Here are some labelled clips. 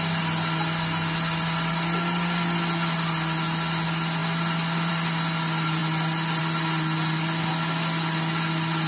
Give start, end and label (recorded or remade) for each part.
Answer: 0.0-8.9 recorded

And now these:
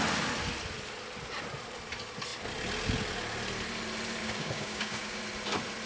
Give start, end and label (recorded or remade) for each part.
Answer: 0.0-4.2 recorded; 4.2-5.2 remade; 5.2-5.9 recorded

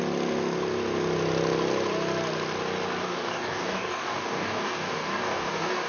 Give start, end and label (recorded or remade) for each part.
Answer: 0.0-3.0 recorded; 3.0-5.9 remade

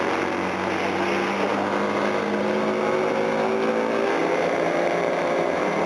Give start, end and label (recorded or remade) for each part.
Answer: 0.0-4.2 recorded; 4.2-5.9 remade

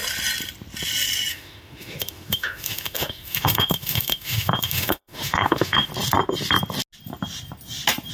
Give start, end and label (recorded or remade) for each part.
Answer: 0.0-1.3 recorded; 1.3-5.9 remade; 5.9-8.1 recorded

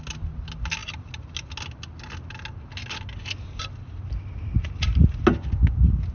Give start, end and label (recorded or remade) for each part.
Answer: 0.0-6.1 recorded

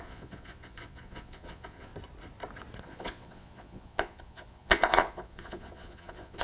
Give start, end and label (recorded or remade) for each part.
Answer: 0.0-1.9 remade; 1.9-2.8 recorded; 2.8-6.4 remade